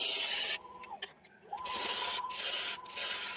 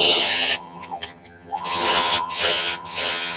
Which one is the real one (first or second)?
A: first